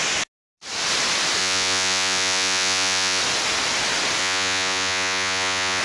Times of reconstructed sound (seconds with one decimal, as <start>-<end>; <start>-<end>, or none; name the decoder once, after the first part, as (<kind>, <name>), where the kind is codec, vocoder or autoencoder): 1.4-3.2 (vocoder, Vocos); 4.2-5.8